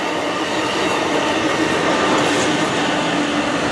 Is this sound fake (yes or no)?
no